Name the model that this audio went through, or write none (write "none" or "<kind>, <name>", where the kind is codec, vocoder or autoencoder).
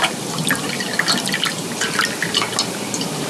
none